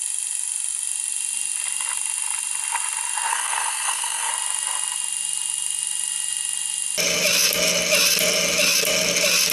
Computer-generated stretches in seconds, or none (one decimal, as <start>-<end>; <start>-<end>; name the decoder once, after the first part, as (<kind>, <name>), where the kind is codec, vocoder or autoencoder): 3.3-4.3 (codec, SNAC)